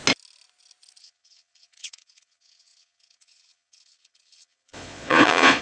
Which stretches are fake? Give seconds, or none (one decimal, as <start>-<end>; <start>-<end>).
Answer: 1.0-5.6